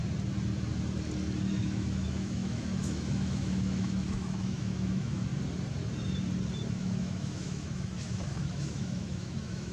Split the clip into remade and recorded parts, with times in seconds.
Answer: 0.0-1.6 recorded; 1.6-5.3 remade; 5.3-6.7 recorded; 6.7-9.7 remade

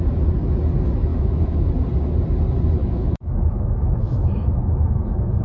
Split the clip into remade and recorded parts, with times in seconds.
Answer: 0.0-1.1 recorded; 1.1-1.7 remade; 1.7-2.8 recorded; 2.8-5.4 remade

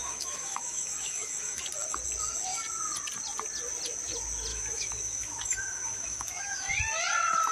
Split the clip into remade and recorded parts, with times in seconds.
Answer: 0.0-1.6 remade; 1.6-4.5 recorded; 4.5-6.7 remade; 6.7-7.5 recorded

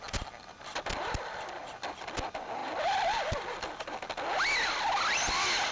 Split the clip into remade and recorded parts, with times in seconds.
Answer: 0.0-5.7 recorded

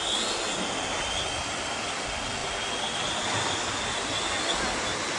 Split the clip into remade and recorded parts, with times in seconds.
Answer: 0.0-5.2 recorded

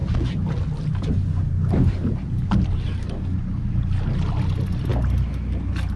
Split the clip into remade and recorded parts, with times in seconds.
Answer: 0.0-6.0 recorded